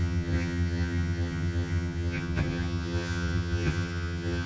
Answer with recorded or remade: remade